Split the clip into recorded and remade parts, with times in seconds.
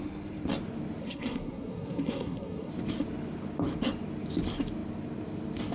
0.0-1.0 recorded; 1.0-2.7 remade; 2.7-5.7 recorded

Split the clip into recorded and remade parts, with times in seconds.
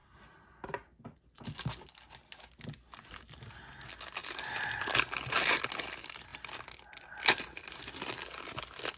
0.0-9.0 recorded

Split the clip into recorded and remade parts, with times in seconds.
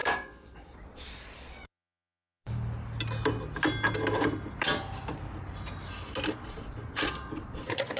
0.0-2.5 remade; 2.5-6.5 recorded; 6.5-8.0 remade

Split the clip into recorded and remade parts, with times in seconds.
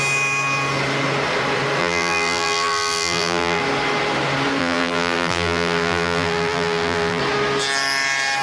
0.0-1.8 recorded; 1.8-3.6 remade; 3.6-4.6 recorded; 4.6-7.2 remade; 7.2-8.4 recorded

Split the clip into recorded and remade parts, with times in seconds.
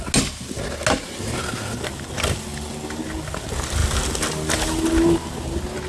0.0-2.5 recorded; 2.5-3.0 remade; 3.0-5.9 recorded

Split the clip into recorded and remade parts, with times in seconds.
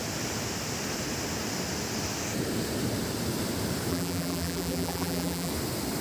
0.0-3.9 recorded; 3.9-5.5 remade; 5.5-6.0 recorded